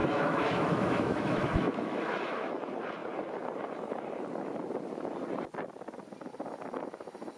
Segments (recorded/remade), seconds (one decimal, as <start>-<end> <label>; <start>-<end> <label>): 0.0-2.5 remade; 2.5-7.4 recorded